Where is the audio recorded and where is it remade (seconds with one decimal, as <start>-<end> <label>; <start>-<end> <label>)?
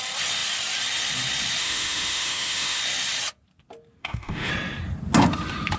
0.0-1.6 recorded; 1.6-2.8 remade; 2.8-4.0 recorded; 4.0-4.5 remade; 4.5-5.8 recorded